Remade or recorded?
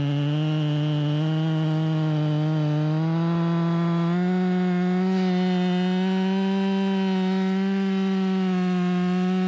recorded